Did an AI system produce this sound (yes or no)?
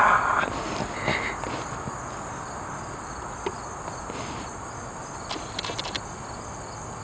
no